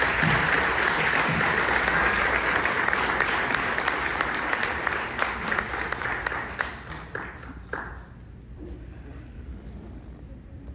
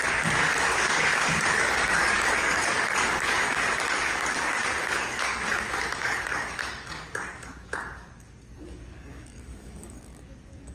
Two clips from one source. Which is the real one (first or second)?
first